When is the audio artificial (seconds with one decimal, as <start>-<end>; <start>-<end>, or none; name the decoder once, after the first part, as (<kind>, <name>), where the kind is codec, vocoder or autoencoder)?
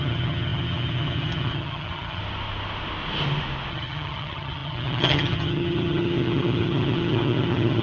0.0-2.2 (vocoder, HiFi-GAN); 3.7-7.8